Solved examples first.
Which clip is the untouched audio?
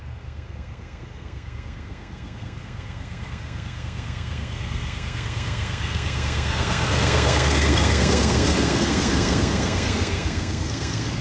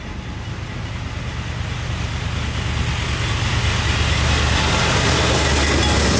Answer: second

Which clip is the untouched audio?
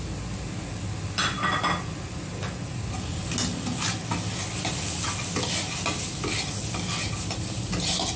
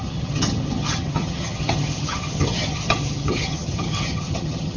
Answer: first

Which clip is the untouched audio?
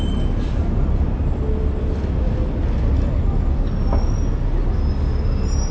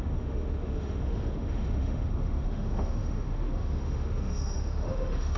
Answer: first